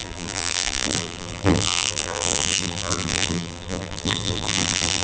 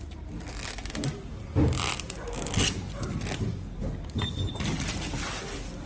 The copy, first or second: first